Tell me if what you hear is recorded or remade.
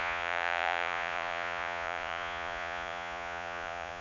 remade